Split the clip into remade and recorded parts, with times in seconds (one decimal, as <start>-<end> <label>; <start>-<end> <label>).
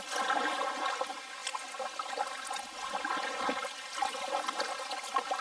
0.0-5.4 recorded